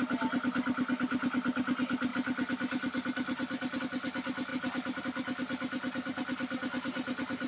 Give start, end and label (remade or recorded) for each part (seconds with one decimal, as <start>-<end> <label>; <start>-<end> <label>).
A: 0.0-7.5 recorded